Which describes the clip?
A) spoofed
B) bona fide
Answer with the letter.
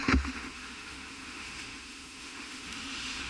A